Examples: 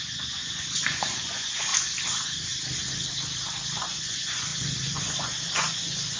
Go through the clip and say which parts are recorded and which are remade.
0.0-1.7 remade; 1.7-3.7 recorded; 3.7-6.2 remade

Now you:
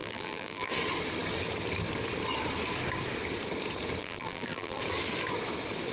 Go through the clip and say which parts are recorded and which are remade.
0.0-0.7 remade; 0.7-4.0 recorded; 4.0-4.8 remade; 4.8-5.9 recorded

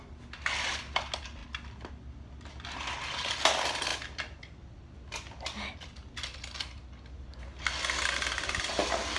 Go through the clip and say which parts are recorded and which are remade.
0.0-9.2 recorded